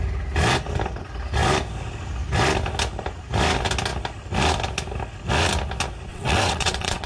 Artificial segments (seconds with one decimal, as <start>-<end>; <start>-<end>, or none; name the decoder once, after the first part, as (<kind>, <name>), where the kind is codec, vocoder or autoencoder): 6.1-7.1 (vocoder, WaveNeXt)